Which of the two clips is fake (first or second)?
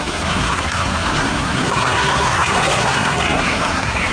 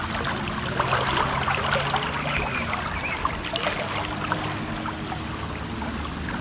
first